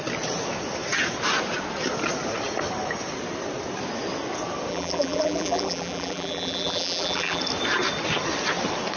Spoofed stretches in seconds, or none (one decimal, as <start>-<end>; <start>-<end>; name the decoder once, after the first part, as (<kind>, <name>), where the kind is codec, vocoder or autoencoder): 4.7-7.4 (vocoder, BigVGAN v2)